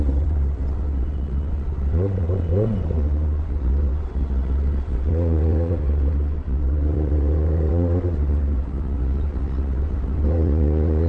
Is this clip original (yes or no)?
no